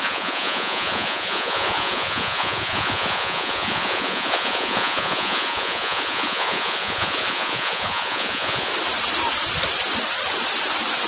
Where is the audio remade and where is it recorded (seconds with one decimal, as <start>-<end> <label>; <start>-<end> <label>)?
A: 0.0-8.7 remade; 8.7-11.1 recorded